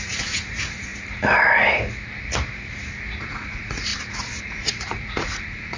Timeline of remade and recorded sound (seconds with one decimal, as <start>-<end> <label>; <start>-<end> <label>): 0.0-0.9 remade; 0.9-3.2 recorded; 3.2-3.9 remade; 3.9-4.4 recorded; 4.4-5.8 remade